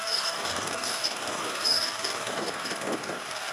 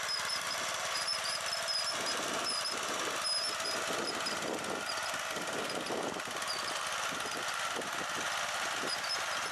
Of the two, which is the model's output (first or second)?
first